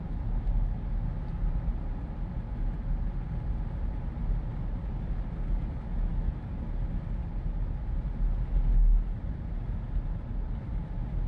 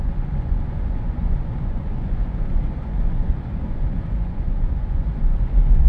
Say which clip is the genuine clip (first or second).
first